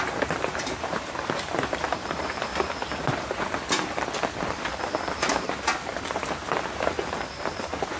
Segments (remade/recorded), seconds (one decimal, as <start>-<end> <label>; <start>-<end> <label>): 0.0-2.5 remade; 2.5-7.3 recorded; 7.3-8.0 remade

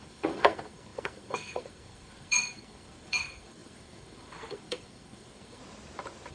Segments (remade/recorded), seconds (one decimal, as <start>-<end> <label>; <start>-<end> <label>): 0.0-5.6 remade; 5.6-6.3 recorded

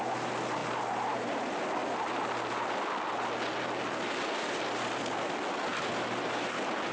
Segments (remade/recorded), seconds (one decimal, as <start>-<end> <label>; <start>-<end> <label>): 0.0-6.9 recorded

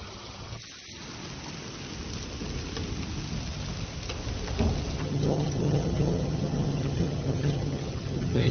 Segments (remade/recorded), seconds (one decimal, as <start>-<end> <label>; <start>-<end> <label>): 0.0-0.6 remade; 0.6-5.0 recorded; 5.0-8.5 remade

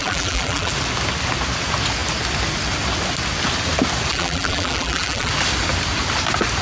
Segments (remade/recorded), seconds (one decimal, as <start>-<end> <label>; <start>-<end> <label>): 0.0-0.7 remade; 0.7-4.1 recorded; 4.1-5.3 remade; 5.3-6.6 recorded

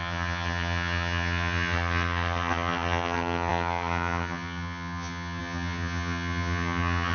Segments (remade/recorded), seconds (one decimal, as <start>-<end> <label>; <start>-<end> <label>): 0.0-7.1 remade

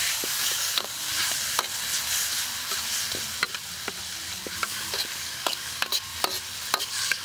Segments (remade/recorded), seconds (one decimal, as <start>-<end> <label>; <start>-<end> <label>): 0.0-1.1 remade; 1.1-4.4 recorded; 4.4-6.1 remade; 6.1-6.8 recorded; 6.8-7.2 remade